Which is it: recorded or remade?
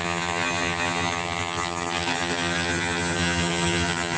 remade